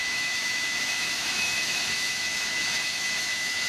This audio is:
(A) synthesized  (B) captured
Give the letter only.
A